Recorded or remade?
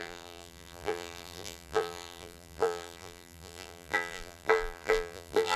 remade